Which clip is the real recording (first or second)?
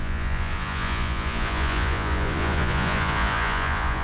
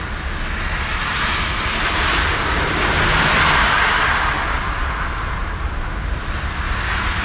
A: second